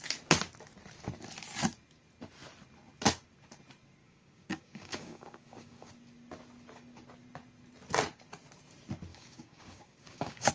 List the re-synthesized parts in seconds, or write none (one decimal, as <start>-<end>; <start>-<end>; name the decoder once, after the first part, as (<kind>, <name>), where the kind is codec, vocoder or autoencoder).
4.0-5.9 (codec, DAC); 9.1-10.5